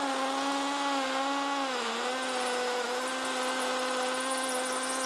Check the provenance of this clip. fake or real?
real